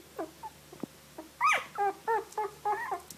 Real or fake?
real